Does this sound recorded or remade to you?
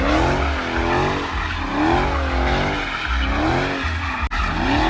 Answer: recorded